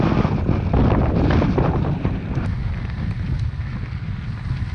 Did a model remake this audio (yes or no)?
no